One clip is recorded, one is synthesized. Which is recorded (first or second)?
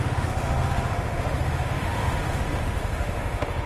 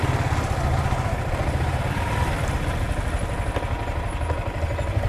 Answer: second